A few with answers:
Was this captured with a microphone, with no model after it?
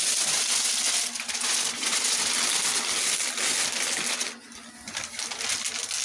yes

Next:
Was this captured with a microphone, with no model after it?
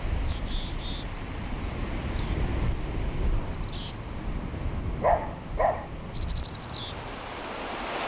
yes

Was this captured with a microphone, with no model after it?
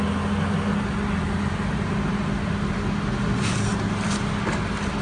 yes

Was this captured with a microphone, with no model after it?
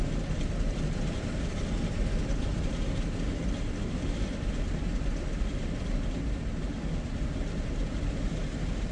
yes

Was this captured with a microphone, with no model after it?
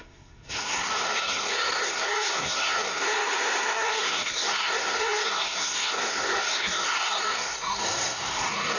no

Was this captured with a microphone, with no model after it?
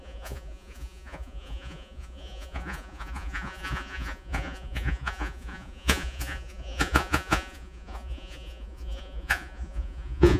no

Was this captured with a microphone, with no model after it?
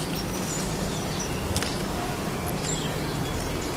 yes